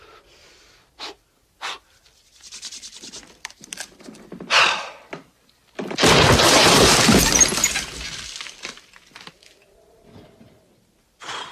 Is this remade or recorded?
recorded